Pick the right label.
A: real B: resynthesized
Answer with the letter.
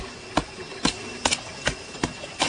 A